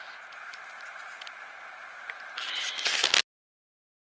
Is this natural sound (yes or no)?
yes